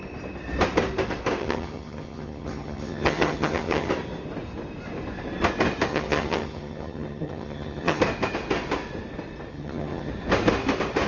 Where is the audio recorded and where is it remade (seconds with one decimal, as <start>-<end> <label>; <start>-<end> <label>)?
0.0-1.4 recorded; 1.4-3.9 remade; 3.9-5.9 recorded; 5.9-8.0 remade; 8.0-9.5 recorded; 9.5-10.1 remade; 10.1-11.1 recorded